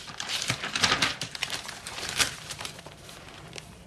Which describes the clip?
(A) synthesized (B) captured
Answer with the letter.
A